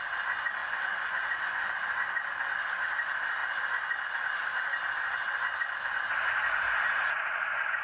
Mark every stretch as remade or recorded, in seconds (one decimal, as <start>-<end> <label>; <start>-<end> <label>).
0.0-0.6 recorded; 0.6-1.7 remade; 1.7-7.8 recorded